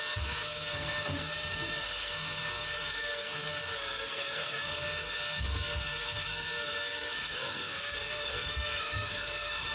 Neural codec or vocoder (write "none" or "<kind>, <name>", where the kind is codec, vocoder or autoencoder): codec, SNAC